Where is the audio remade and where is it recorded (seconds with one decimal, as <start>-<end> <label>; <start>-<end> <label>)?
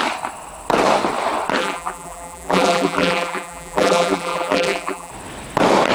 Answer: 0.0-1.6 recorded; 1.6-5.1 remade; 5.1-5.9 recorded